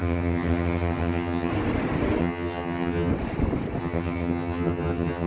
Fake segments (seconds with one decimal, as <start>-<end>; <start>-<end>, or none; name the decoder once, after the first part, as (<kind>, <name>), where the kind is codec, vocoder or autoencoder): 0.0-1.5 (vocoder, HiFi-GAN); 2.2-3.1; 3.8-5.3